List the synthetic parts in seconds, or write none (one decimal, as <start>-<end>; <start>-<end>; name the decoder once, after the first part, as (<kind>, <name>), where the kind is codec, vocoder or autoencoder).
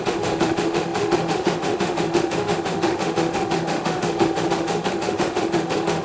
0.0-6.0 (autoencoder, DAC-VAE)